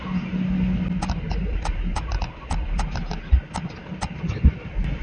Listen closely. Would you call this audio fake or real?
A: real